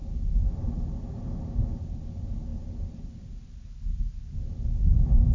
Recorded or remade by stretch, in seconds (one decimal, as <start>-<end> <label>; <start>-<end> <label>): 0.0-5.3 recorded

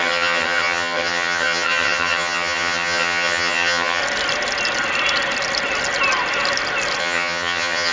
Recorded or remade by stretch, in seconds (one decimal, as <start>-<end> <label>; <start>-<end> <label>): 0.0-4.0 remade; 4.0-7.0 recorded; 7.0-7.9 remade